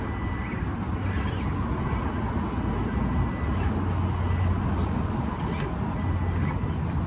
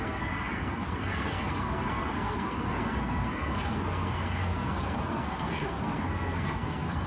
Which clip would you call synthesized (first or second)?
second